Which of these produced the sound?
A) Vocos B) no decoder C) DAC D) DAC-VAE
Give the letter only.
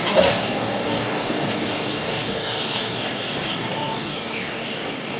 C